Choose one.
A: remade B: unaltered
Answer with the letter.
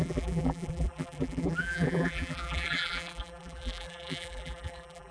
A